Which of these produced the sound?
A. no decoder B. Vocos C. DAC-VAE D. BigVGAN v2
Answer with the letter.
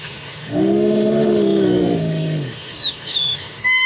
C